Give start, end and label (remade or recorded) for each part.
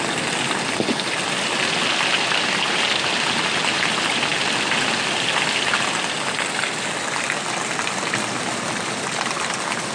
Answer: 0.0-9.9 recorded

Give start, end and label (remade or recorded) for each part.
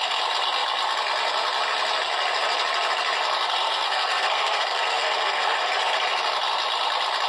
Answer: 0.0-3.6 recorded; 3.6-5.6 remade; 5.6-7.3 recorded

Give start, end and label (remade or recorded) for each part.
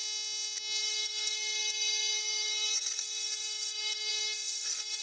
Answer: 0.0-0.8 recorded; 0.8-5.0 remade